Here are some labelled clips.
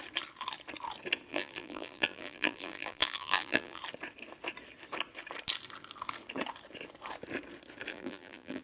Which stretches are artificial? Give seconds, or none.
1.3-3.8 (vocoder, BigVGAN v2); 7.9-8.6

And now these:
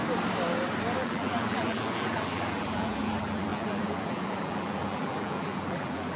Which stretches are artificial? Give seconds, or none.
1.0-6.2 (vocoder, BigVGAN v2)

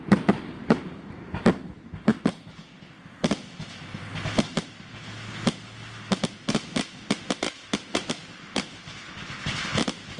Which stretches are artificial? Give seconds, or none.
4.5-5.0 (vocoder, BigVGAN v2)